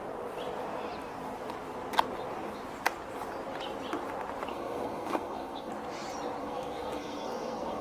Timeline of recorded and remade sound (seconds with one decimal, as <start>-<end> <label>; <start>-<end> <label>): 0.0-4.5 recorded; 4.5-5.7 remade; 5.7-6.4 recorded; 6.4-7.8 remade